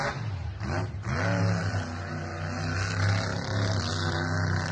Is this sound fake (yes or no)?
no